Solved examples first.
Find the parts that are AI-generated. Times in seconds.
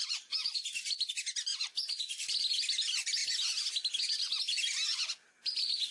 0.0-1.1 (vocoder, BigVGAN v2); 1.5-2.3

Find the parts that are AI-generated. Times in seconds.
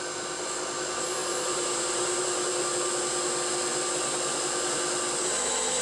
1.2-2.6 (vocoder, BigVGAN v2)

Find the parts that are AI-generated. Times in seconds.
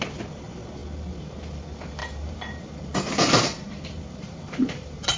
2.0-5.2 (vocoder, BigVGAN v2)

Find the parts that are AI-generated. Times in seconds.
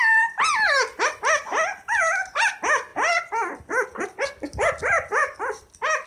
0.9-2.0 (vocoder, BigVGAN v2)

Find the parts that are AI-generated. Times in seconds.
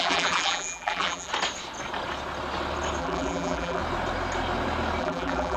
0.0-1.3 (vocoder, BigVGAN v2); 3.0-3.8; 5.0-5.6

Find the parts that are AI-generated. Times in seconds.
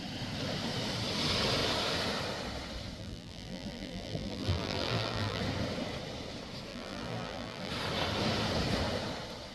3.0-5.4 (vocoder, BigVGAN v2); 6.7-7.7